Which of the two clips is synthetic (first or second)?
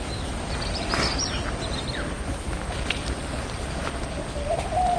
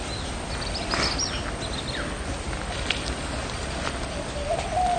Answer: first